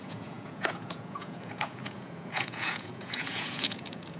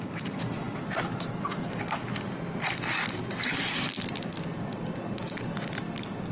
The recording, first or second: second